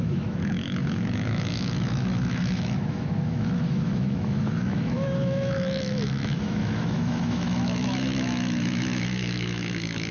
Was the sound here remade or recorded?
remade